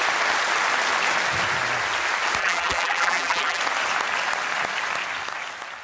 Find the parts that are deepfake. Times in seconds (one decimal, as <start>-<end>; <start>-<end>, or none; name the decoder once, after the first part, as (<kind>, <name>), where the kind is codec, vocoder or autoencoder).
2.4-3.6 (vocoder, BigVGAN v2)